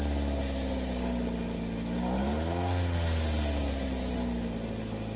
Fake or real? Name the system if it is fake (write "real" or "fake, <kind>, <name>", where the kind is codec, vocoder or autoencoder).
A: real